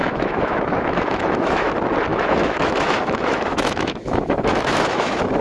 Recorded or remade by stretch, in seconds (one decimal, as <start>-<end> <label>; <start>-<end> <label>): 0.0-1.7 remade; 1.7-2.1 recorded; 2.1-5.4 remade

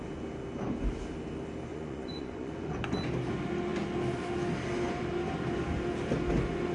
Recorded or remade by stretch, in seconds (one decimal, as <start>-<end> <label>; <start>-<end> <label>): 0.0-1.7 recorded; 1.7-2.8 remade; 2.8-6.7 recorded

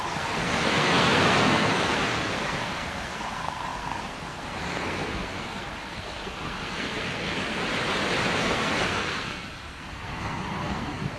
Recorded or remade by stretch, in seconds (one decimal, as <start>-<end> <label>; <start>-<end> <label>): 0.0-7.6 remade; 7.6-8.4 recorded; 8.4-11.2 remade

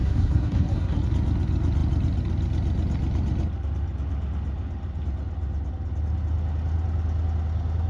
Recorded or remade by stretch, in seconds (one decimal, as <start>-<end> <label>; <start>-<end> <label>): 0.0-1.0 remade; 1.0-7.9 recorded

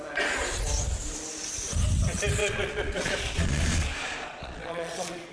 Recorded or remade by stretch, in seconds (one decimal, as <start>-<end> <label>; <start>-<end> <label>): 0.0-2.4 recorded; 2.4-5.3 remade

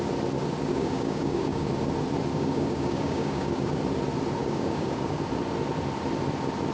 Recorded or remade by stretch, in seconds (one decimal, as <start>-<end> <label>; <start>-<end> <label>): 0.0-0.7 recorded; 0.7-1.7 remade; 1.7-2.3 recorded; 2.3-3.8 remade; 3.8-4.4 recorded; 4.4-5.2 remade; 5.2-6.7 recorded

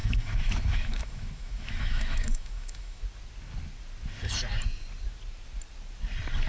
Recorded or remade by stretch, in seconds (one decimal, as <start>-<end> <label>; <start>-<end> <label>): 0.0-3.0 remade; 3.0-6.5 recorded

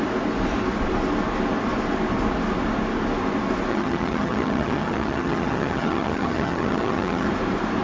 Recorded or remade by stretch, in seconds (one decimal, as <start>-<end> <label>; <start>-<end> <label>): 0.0-3.7 recorded; 3.7-7.3 remade; 7.3-7.8 recorded